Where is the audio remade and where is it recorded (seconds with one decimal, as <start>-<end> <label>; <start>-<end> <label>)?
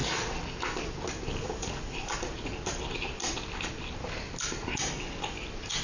0.0-5.8 recorded